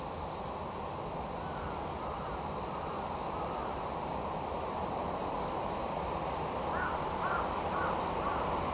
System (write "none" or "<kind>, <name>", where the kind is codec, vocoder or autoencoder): none